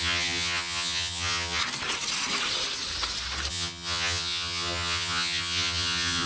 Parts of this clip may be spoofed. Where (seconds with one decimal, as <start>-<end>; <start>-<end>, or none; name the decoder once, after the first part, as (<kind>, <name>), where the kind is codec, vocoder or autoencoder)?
0.0-1.6 (vocoder, HiFi-GAN); 3.5-6.3